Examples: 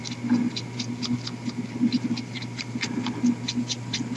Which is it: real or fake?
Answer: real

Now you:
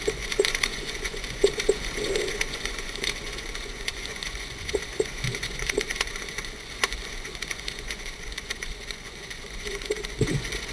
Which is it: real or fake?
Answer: fake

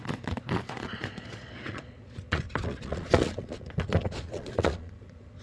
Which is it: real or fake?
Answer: fake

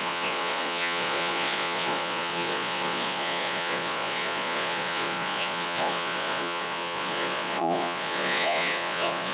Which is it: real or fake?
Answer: fake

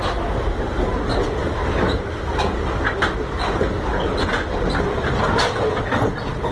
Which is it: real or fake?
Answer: real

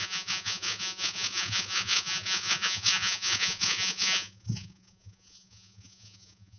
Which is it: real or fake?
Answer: fake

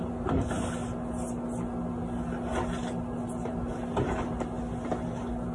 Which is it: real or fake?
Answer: real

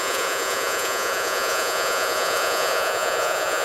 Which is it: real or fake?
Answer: fake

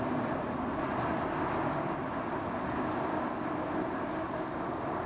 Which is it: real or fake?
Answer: real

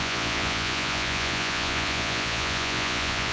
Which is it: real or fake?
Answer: fake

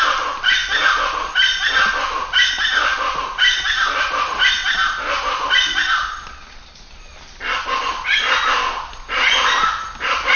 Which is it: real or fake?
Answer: real